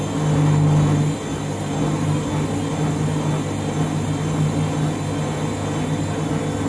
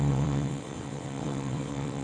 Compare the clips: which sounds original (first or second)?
first